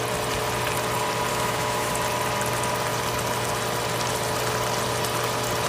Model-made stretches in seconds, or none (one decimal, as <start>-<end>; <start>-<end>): 1.3-1.9